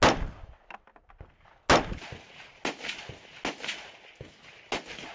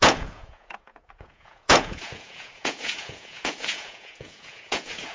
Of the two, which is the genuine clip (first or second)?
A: first